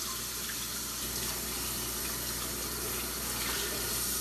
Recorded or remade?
recorded